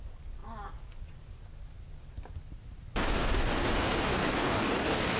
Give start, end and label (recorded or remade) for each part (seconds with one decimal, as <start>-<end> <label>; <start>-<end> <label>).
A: 0.0-4.4 recorded; 4.4-5.2 remade